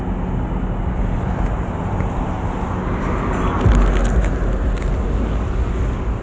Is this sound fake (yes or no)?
no